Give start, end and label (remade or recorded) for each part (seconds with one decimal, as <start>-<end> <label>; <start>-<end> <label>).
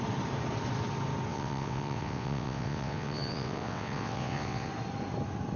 0.0-1.3 recorded; 1.3-4.7 remade; 4.7-5.6 recorded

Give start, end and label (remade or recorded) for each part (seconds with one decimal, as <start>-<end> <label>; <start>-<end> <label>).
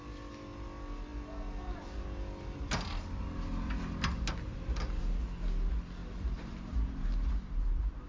0.0-6.0 recorded; 6.0-8.1 remade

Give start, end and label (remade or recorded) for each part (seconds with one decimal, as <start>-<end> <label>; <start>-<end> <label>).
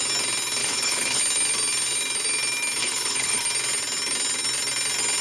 0.0-0.6 recorded; 0.6-1.2 remade; 1.2-2.8 recorded; 2.8-3.4 remade; 3.4-5.2 recorded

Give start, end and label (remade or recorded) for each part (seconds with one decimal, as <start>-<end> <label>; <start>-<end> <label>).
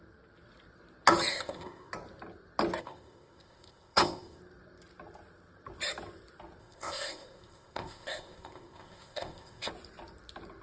0.0-1.3 recorded; 1.3-1.9 remade; 1.9-2.8 recorded; 2.8-4.4 remade; 4.4-6.6 recorded; 6.6-9.7 remade; 9.7-10.6 recorded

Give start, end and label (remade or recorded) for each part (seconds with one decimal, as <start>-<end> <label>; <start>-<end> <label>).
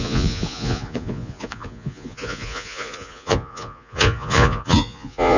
0.0-5.4 remade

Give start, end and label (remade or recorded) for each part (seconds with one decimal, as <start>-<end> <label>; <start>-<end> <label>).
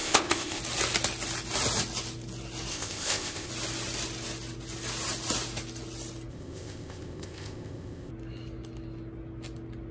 0.0-0.6 remade; 0.6-2.7 recorded; 2.7-3.5 remade; 3.5-6.3 recorded; 6.3-8.1 remade; 8.1-9.9 recorded